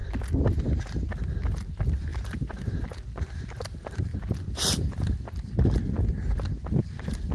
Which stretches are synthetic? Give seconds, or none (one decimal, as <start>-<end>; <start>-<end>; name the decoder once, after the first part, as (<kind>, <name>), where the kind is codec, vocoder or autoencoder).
2.1-2.9 (vocoder, BigVGAN v2)